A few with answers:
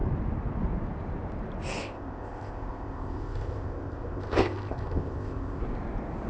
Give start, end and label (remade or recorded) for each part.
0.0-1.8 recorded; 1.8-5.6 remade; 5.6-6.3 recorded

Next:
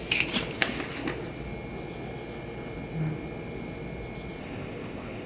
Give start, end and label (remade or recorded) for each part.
0.0-4.4 recorded; 4.4-5.3 remade

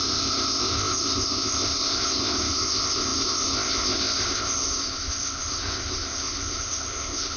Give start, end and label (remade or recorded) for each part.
0.0-7.4 remade